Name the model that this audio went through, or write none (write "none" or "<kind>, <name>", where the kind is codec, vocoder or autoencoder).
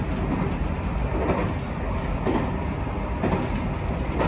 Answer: none